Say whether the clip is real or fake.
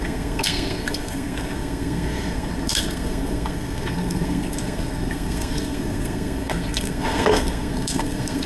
fake